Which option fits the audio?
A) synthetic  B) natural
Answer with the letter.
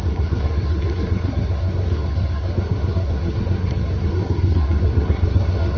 A